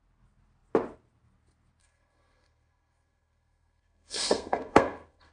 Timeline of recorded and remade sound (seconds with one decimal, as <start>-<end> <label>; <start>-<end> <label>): 0.0-1.8 recorded; 1.8-5.3 remade